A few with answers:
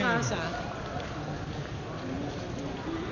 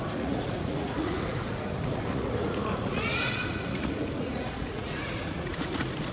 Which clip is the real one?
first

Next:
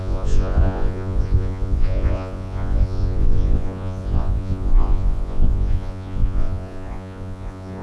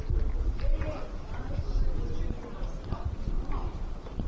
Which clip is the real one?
second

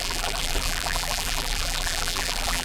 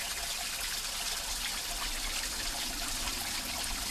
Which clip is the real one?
second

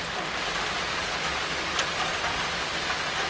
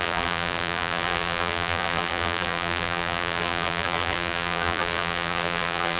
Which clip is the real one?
first